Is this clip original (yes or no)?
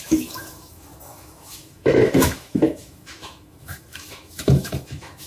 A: no